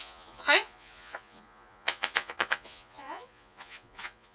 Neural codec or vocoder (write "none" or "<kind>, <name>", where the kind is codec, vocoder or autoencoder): vocoder, Vocos